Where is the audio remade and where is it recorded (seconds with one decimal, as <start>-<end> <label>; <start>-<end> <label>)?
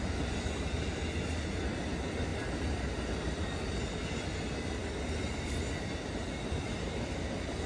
0.0-7.7 recorded